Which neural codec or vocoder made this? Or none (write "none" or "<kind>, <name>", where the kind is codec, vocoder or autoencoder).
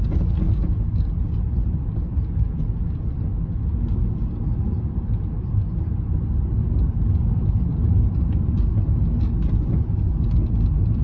none